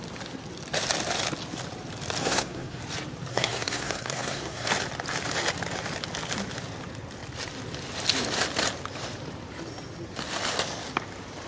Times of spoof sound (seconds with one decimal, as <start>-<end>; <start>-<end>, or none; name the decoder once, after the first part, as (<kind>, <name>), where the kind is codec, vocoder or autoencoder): 2.2-2.8 (codec, SNAC); 3.3-4.7